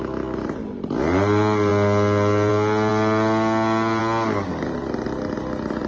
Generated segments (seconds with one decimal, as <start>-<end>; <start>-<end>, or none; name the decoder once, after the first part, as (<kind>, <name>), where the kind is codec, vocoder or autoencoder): none

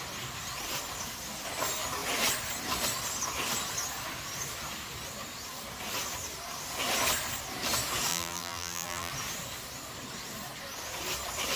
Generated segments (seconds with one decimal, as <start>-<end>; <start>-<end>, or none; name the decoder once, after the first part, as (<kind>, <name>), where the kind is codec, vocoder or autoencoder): 8.1-9.1 (vocoder, BigVGAN v2)

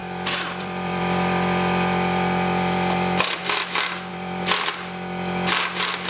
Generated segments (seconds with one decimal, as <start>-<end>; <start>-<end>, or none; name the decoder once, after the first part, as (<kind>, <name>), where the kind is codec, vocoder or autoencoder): 0.0-3.4 (vocoder, BigVGAN v2); 4.1-4.7